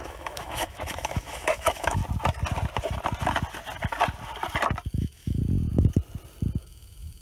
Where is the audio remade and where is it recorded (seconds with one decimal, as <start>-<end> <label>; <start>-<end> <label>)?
0.0-2.0 remade; 2.0-4.9 recorded; 4.9-5.4 remade; 5.4-6.6 recorded; 6.6-7.2 remade